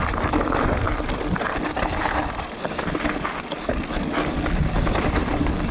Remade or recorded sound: recorded